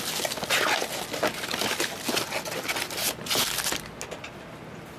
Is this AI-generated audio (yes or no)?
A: no